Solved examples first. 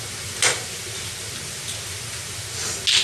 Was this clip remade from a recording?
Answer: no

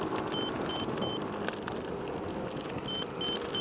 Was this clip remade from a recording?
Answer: no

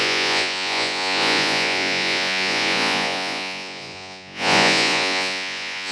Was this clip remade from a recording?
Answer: yes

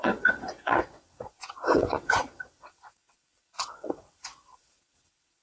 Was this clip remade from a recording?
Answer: yes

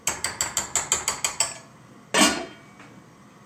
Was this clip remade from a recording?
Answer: no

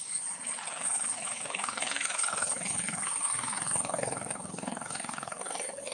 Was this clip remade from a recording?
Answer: yes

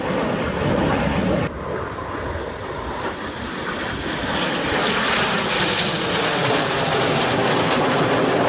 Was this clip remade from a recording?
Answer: no